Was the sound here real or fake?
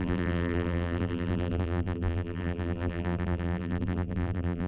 fake